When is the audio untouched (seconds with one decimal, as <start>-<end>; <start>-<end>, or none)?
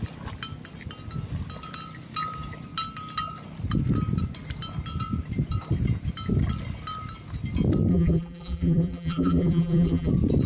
0.0-7.9; 10.1-10.5